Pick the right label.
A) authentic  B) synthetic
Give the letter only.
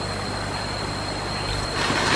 A